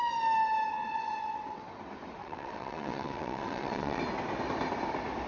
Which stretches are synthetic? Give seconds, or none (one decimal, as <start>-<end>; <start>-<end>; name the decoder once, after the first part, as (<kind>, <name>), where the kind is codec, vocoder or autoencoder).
0.7-1.6 (vocoder, WaveNeXt); 2.2-4.0